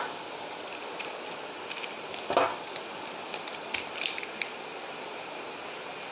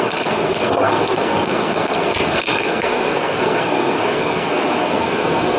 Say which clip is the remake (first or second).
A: second